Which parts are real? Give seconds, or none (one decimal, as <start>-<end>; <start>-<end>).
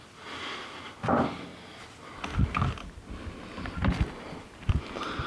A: 0.0-5.3